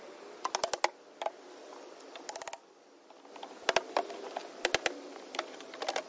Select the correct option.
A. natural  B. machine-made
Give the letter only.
A